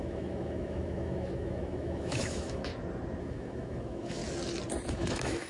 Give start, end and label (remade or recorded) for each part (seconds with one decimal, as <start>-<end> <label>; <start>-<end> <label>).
0.0-2.7 remade; 2.7-3.2 recorded; 3.2-4.2 remade; 4.2-4.9 recorded; 4.9-5.5 remade